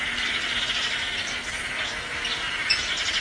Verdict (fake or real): real